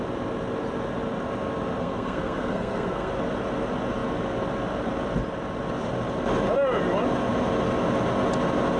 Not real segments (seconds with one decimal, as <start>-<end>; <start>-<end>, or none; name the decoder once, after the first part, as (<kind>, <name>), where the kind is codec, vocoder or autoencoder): 1.8-3.1 (codec, SNAC)